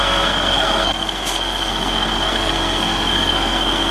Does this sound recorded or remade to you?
remade